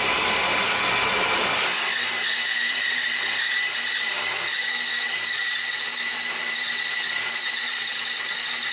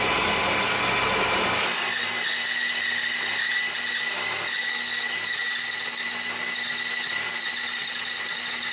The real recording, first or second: second